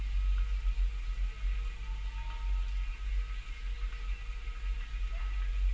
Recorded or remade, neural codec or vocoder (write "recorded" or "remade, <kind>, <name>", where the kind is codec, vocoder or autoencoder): recorded